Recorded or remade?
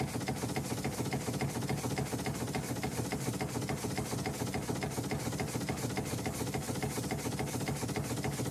recorded